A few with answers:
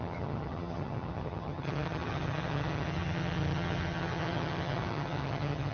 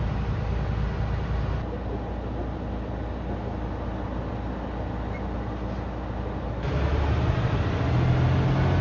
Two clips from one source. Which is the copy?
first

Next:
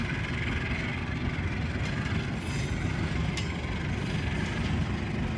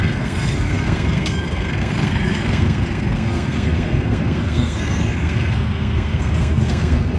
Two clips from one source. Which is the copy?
second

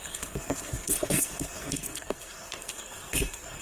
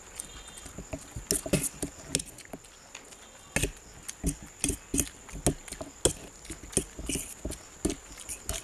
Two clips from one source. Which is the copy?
first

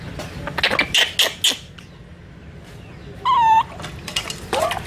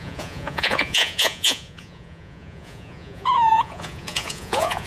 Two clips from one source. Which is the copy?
second